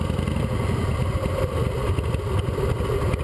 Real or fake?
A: real